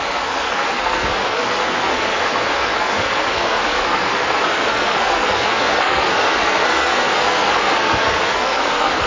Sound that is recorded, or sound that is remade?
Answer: remade